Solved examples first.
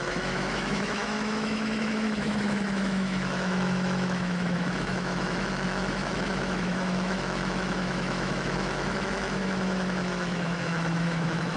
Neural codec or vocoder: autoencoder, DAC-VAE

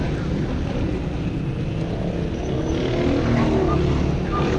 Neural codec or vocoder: none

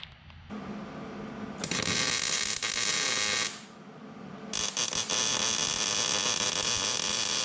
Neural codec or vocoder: none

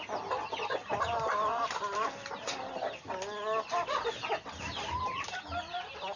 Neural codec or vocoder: none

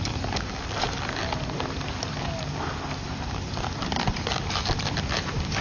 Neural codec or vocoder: vocoder, BigVGAN v2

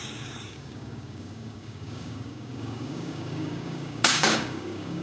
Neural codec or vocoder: codec, DAC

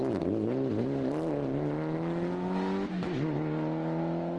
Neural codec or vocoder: none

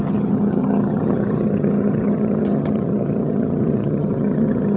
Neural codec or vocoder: vocoder, HiFi-GAN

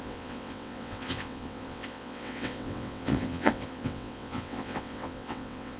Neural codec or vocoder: vocoder, WaveNeXt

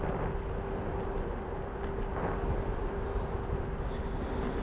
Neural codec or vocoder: none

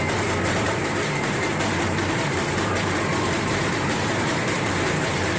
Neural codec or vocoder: vocoder, BigVGAN v2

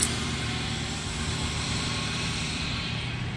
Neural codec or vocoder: vocoder, BigVGAN v2